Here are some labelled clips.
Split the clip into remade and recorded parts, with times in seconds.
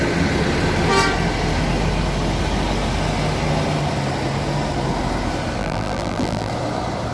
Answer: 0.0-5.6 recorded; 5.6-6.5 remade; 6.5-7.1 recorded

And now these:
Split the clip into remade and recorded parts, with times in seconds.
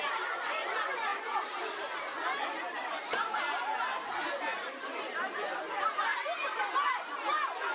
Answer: 0.0-1.1 recorded; 1.1-3.4 remade; 3.4-3.9 recorded; 3.9-5.6 remade; 5.6-6.1 recorded; 6.1-6.7 remade; 6.7-7.7 recorded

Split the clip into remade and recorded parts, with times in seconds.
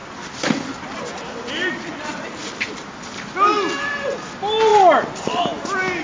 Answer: 0.0-2.9 remade; 2.9-4.7 recorded; 4.7-5.4 remade; 5.4-6.0 recorded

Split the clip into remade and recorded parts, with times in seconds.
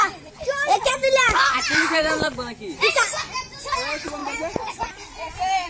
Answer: 0.0-2.3 remade; 2.3-5.7 recorded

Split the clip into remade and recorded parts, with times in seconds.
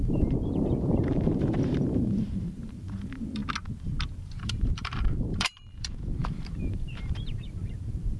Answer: 0.0-3.4 remade; 3.4-4.2 recorded; 4.2-8.2 remade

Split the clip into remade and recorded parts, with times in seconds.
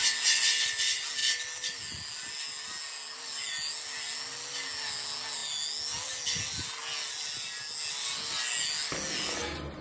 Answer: 0.0-9.8 recorded